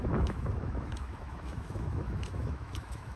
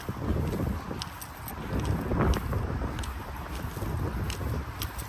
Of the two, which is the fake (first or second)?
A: first